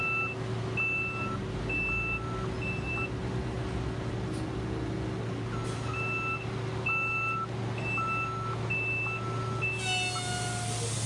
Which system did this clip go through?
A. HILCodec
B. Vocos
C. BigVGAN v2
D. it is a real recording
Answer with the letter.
D